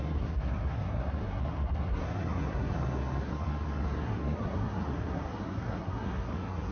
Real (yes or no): no